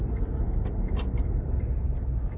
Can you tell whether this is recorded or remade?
recorded